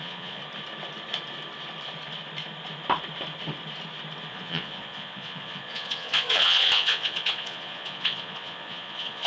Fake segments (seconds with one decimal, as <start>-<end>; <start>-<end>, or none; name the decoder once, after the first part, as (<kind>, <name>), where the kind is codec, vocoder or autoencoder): 0.0-0.4 (vocoder, Vocos); 4.3-9.3